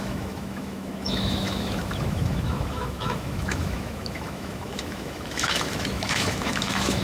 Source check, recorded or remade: remade